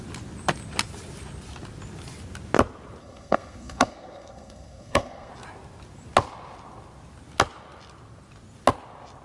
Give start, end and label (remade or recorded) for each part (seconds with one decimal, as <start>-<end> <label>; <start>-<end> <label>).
0.0-3.0 recorded; 3.0-5.3 remade; 5.3-9.2 recorded